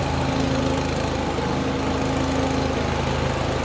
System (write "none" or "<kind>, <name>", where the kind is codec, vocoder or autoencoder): none